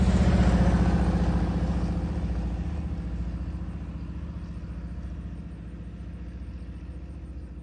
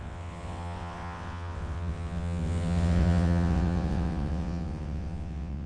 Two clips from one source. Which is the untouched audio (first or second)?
first